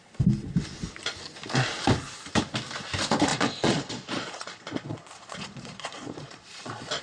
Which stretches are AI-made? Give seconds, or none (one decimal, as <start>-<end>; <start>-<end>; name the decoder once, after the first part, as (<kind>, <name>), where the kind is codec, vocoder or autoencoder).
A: 3.3-7.0 (vocoder, Vocos)